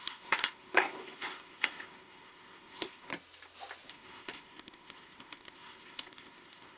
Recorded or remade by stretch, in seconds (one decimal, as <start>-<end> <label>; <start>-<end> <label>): 0.0-3.1 remade; 3.1-3.9 recorded; 3.9-6.8 remade